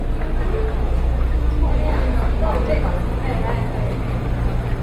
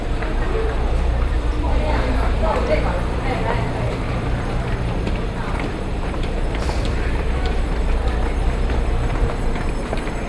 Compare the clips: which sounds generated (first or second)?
second